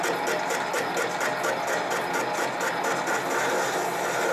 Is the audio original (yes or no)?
yes